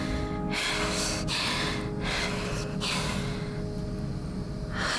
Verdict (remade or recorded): recorded